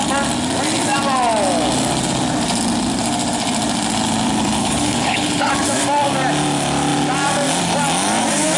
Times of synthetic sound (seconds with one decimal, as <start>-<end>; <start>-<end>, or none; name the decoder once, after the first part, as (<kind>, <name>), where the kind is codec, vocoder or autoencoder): 4.6-5.5 (codec, HILCodec)